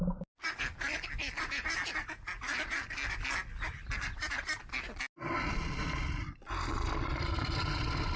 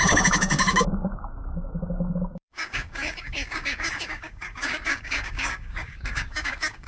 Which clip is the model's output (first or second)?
second